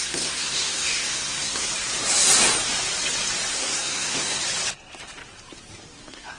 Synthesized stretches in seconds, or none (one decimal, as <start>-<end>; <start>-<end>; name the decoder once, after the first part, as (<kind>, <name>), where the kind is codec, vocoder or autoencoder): 0.0-1.7 (codec, SNAC); 3.5-4.4; 6.0-6.4

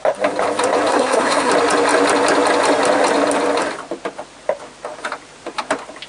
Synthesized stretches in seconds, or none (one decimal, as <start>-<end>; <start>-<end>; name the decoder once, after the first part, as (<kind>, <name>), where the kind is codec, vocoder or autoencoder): 0.9-1.5 (codec, SNAC)